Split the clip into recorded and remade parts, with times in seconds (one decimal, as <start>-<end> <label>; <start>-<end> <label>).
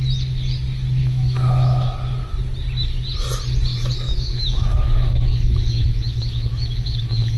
0.0-1.0 recorded; 1.0-1.9 remade; 1.9-3.7 recorded; 3.7-7.4 remade